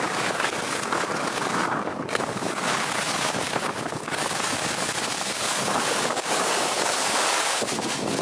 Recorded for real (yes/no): no